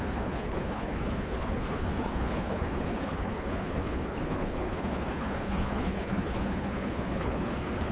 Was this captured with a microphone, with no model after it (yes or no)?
no